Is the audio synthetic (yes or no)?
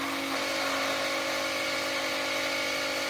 no